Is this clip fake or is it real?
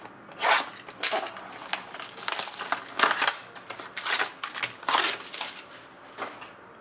real